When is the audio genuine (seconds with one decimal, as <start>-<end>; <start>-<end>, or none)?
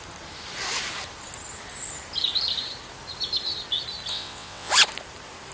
0.0-4.1; 4.7-5.5